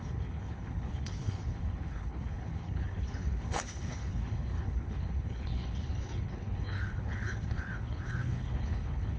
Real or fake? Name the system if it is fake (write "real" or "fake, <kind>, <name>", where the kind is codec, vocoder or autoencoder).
fake, codec, HILCodec